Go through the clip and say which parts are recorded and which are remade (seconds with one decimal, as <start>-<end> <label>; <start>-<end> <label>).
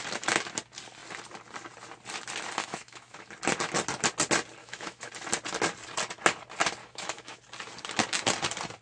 0.0-2.6 recorded; 2.6-3.3 remade; 3.3-4.6 recorded; 4.6-5.1 remade; 5.1-6.8 recorded; 6.8-7.4 remade; 7.4-8.8 recorded